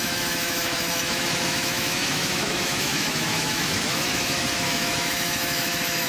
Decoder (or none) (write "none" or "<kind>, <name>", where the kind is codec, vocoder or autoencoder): autoencoder, DAC-VAE